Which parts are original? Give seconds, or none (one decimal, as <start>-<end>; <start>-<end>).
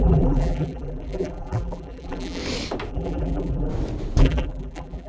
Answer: 2.4-2.9; 3.7-4.2